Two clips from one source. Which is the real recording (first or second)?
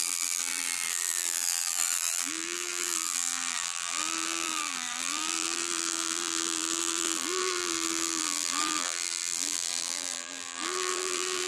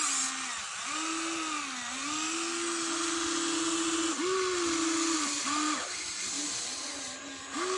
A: second